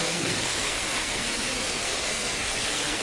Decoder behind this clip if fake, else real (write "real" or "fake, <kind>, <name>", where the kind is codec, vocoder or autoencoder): fake, codec, SNAC